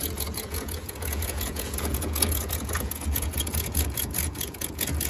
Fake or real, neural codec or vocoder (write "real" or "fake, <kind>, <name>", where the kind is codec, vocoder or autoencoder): fake, vocoder, Vocos